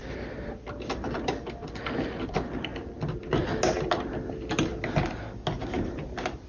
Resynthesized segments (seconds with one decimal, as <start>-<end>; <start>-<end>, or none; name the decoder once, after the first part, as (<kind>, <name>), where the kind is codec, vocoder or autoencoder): none